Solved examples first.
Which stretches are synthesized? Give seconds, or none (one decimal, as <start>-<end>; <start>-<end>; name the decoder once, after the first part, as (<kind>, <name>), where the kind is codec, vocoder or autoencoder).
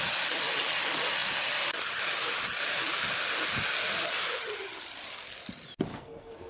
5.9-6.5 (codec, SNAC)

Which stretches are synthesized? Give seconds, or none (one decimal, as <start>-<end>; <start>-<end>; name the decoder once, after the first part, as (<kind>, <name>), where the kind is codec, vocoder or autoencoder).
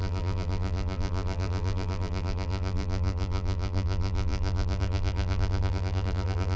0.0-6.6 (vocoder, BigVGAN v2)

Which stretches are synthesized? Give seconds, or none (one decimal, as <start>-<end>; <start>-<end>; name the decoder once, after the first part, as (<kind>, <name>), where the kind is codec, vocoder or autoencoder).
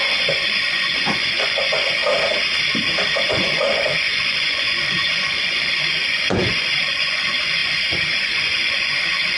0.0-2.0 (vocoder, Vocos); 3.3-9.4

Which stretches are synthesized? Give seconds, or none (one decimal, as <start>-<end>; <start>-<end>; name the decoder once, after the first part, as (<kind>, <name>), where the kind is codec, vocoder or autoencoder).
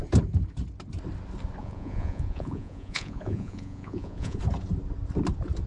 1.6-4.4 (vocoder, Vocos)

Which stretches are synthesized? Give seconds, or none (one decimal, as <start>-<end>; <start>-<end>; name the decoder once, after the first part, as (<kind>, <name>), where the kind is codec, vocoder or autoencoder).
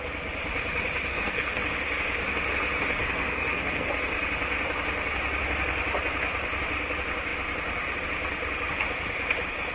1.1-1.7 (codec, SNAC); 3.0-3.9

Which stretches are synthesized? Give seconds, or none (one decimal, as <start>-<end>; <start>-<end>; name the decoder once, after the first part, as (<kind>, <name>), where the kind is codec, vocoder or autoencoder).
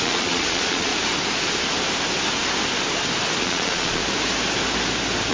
0.0-0.9 (vocoder, Vocos); 3.4-4.0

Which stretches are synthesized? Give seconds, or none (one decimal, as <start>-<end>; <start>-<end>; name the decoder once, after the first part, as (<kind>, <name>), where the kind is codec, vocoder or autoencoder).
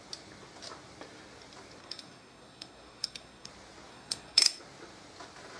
1.8-3.5 (codec, SNAC); 3.9-4.6